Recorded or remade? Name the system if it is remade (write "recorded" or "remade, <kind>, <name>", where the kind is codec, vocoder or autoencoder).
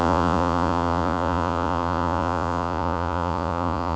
remade, vocoder, Vocos